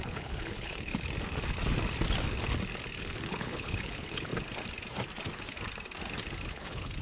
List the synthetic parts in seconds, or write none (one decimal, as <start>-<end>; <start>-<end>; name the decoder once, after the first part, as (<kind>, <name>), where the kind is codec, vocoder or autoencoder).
0.0-0.9 (codec, HILCodec); 3.0-4.3; 6.5-7.0